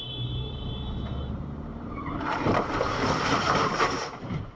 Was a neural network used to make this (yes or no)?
yes